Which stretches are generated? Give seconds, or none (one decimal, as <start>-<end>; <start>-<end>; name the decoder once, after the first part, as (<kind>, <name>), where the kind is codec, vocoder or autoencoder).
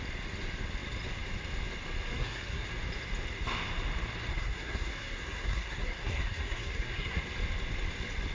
2.1-2.7 (codec, SNAC); 4.3-7.2